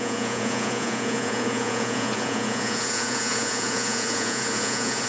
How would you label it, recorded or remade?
remade